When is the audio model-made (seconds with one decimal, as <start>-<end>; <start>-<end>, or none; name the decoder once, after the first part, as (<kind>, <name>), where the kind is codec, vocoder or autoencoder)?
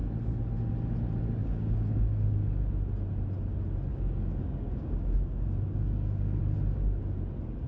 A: 1.4-2.7 (codec, DAC); 3.9-6.4